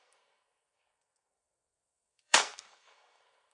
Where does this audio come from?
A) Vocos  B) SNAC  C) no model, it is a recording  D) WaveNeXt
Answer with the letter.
B